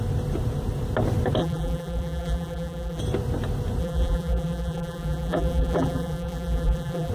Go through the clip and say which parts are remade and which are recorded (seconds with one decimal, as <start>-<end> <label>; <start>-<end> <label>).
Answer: 0.0-1.4 recorded; 1.4-3.0 remade; 3.0-3.8 recorded; 3.8-7.1 remade